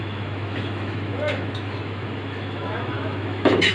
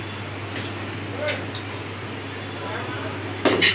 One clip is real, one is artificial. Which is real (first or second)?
second